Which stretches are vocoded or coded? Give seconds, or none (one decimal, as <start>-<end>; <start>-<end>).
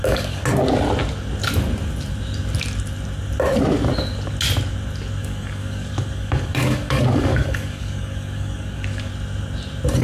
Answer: 0.0-0.4; 5.2-9.1